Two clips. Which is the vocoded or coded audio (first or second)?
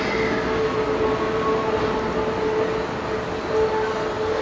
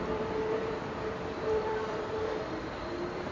second